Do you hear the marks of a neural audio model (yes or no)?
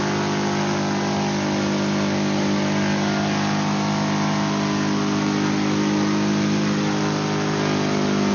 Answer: no